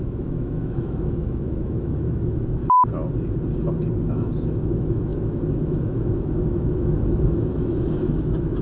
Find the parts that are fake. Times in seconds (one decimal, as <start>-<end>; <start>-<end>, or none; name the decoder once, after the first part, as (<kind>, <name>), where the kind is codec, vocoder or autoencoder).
0.0-2.6 (autoencoder, DAC-VAE); 4.1-8.6